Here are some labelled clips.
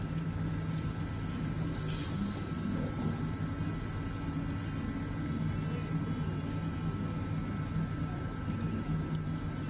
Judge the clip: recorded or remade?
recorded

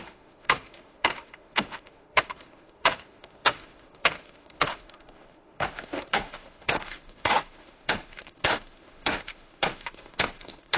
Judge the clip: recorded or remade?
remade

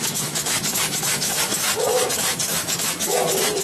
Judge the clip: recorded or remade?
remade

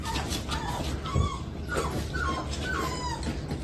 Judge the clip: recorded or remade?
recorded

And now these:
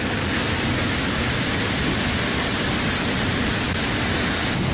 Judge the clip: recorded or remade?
recorded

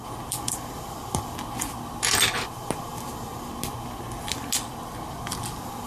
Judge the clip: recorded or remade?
recorded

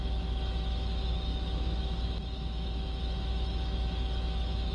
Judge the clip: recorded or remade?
remade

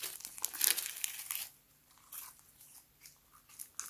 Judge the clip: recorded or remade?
recorded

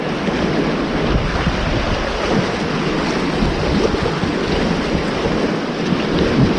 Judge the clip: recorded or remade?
recorded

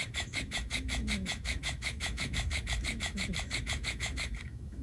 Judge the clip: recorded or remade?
remade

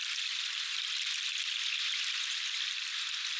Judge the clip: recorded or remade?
recorded